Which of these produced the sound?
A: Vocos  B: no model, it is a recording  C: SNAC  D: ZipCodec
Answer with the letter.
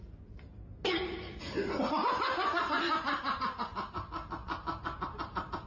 B